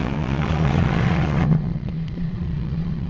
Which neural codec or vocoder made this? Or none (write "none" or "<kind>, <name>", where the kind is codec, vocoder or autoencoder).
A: vocoder, Vocos